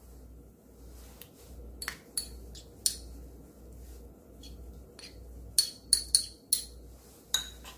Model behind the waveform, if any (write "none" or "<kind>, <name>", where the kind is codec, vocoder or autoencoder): none